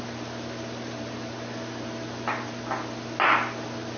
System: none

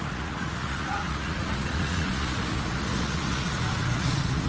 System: vocoder, Vocos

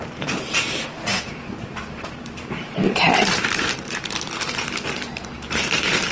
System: vocoder, BigVGAN v2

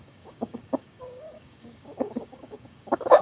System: codec, DAC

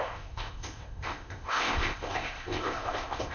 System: codec, ZipCodec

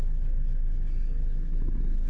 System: none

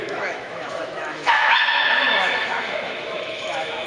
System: autoencoder, DAC-VAE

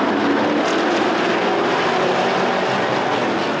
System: none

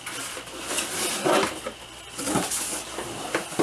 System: none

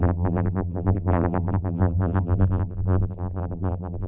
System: vocoder, BigVGAN v2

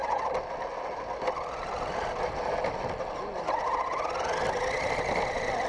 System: none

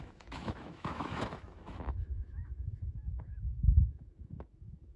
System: autoencoder, DAC-VAE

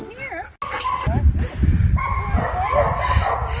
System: none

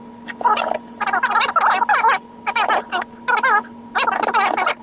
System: none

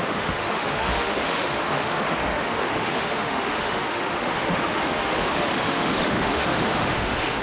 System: autoencoder, DAC-VAE